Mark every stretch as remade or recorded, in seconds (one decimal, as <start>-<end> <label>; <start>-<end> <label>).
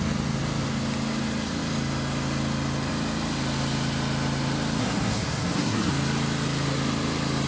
0.0-4.8 recorded; 4.8-5.9 remade; 5.9-7.5 recorded